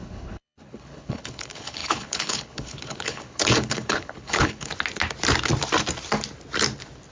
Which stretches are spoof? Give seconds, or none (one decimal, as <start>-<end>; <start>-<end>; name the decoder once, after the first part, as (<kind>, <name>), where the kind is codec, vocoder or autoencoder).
0.0-4.7 (codec, HILCodec)